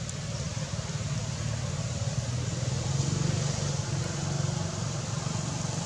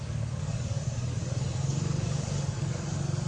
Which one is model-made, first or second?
second